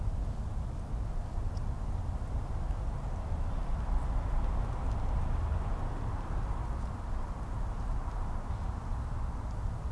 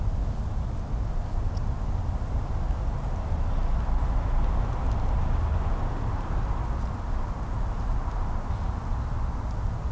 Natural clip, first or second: second